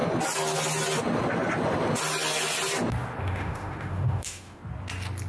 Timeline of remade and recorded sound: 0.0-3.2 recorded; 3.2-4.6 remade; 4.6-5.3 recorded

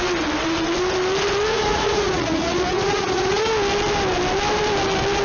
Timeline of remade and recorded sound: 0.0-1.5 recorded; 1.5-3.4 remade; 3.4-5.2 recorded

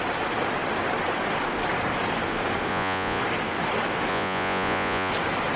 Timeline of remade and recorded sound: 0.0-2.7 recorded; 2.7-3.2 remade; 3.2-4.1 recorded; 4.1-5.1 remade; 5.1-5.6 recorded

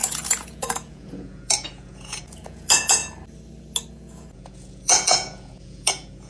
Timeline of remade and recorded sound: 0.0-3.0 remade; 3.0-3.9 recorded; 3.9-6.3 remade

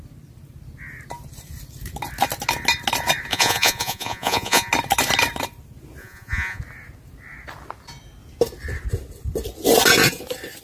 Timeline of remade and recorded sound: 0.0-3.3 recorded; 3.3-4.7 remade; 4.7-6.0 recorded; 6.0-6.6 remade; 6.6-10.6 recorded